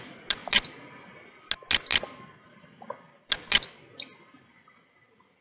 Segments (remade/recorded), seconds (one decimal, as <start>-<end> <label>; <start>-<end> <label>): 0.0-5.4 recorded

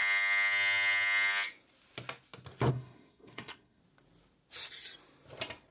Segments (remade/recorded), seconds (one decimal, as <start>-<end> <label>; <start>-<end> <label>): 0.0-2.7 recorded; 2.7-3.8 remade; 3.8-5.7 recorded

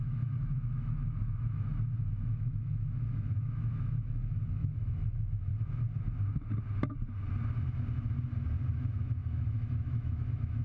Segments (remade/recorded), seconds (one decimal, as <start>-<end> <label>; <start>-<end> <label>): 0.0-5.5 remade; 5.5-8.7 recorded; 8.7-10.6 remade

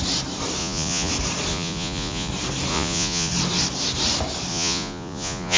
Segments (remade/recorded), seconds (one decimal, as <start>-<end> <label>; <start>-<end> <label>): 0.0-0.6 recorded; 0.6-1.1 remade; 1.1-1.5 recorded; 1.5-2.3 remade; 2.3-2.7 recorded; 2.7-3.3 remade; 3.3-4.5 recorded; 4.5-5.6 remade

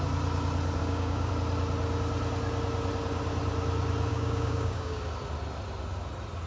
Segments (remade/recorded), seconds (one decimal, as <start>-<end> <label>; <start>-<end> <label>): 0.0-0.8 recorded; 0.8-1.3 remade; 1.3-4.1 recorded; 4.1-5.0 remade; 5.0-6.5 recorded